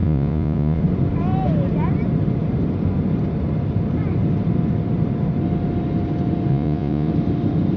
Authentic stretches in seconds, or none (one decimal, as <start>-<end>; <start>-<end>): 0.8-6.5; 7.1-7.8